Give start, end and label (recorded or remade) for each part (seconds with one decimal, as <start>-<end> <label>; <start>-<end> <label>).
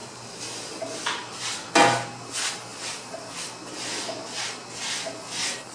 0.0-2.7 recorded; 2.7-3.3 remade; 3.3-5.7 recorded